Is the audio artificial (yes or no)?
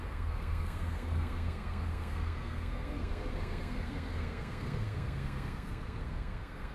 yes